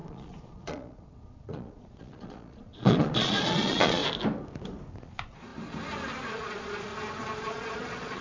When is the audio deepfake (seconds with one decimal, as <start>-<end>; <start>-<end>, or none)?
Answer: 0.0-4.0; 5.0-5.5; 6.3-6.9; 7.4-8.2